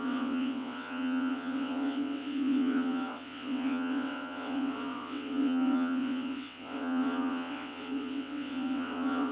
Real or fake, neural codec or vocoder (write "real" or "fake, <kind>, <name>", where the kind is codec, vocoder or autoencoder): fake, vocoder, WaveNeXt